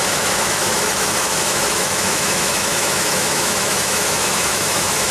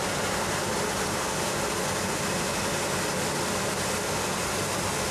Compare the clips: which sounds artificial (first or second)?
first